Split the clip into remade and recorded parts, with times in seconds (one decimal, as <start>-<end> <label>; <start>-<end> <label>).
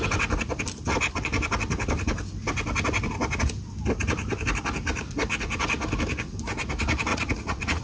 0.0-7.1 recorded; 7.1-7.8 remade